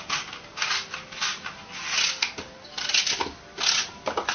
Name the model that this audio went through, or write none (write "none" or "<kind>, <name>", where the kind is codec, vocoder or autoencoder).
none